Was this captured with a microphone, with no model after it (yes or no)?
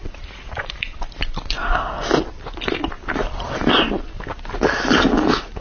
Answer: yes